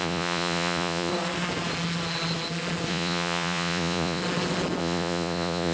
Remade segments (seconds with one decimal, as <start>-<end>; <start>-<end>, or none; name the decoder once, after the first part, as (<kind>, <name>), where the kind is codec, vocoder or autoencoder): 0.0-1.1 (vocoder, Vocos); 2.9-4.2; 4.8-5.7